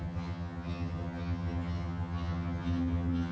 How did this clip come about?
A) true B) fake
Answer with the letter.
B